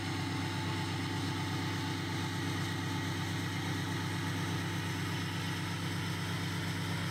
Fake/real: real